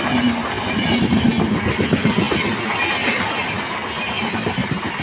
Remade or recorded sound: recorded